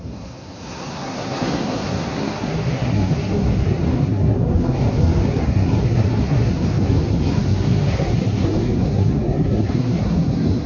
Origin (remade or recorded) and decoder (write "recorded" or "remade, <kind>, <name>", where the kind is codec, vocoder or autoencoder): remade, codec, SNAC